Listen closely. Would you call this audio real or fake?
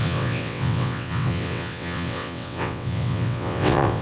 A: fake